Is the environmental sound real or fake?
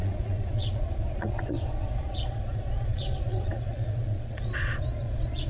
fake